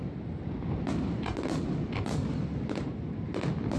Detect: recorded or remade recorded